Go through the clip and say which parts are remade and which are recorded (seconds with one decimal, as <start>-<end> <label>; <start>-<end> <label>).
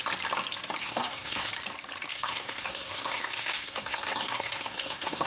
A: 0.0-0.8 recorded; 0.8-1.5 remade; 1.5-2.1 recorded; 2.1-5.3 remade